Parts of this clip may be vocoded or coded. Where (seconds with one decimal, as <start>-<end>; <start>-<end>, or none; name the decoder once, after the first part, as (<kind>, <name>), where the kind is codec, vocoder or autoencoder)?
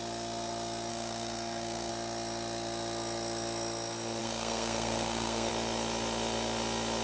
0.9-1.9 (codec, SNAC); 4.2-5.5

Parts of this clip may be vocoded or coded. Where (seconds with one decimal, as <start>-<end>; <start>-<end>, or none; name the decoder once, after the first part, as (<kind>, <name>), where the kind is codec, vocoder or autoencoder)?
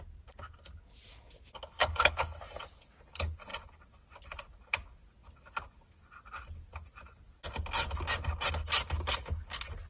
1.8-2.4 (codec, HILCodec)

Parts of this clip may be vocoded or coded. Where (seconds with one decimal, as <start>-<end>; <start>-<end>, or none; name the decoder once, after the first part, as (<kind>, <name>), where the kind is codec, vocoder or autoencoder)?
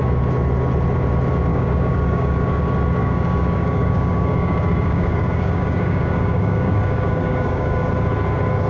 1.5-2.6 (codec, DAC); 3.0-7.9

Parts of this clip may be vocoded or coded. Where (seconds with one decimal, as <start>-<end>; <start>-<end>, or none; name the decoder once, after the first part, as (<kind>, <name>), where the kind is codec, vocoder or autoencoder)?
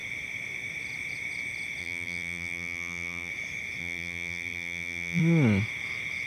1.8-3.3 (vocoder, BigVGAN v2); 3.8-5.2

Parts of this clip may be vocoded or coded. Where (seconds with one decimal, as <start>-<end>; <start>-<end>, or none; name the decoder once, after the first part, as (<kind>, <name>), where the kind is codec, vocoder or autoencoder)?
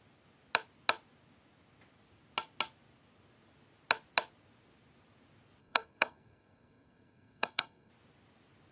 5.6-7.9 (codec, SNAC)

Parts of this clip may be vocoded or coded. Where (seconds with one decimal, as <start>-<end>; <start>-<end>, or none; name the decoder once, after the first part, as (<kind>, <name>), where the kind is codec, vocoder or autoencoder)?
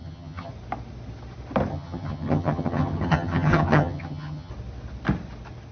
0.0-0.5 (vocoder, HiFi-GAN); 1.7-4.5